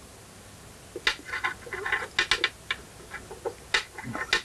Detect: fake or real real